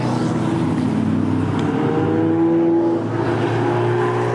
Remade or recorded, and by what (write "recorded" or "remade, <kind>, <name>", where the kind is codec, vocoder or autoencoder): recorded